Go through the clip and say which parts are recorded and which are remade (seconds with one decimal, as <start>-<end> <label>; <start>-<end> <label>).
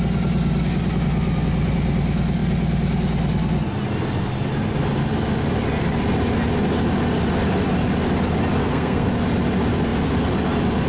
0.0-8.6 recorded; 8.6-9.1 remade; 9.1-10.9 recorded